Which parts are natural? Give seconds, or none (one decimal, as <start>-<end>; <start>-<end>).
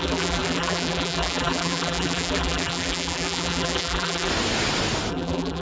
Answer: 4.3-5.1